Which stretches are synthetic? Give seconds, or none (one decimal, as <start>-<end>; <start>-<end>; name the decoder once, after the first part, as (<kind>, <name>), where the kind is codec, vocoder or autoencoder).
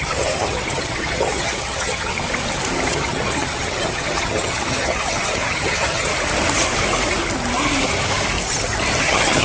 0.0-2.1 (vocoder, HiFi-GAN); 2.9-6.1; 9.0-9.4